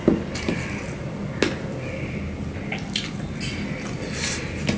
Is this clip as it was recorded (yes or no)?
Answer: yes